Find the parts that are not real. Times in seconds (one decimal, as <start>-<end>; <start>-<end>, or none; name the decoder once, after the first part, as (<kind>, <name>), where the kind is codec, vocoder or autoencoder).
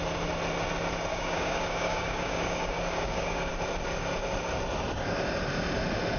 1.1-3.5 (codec, DAC)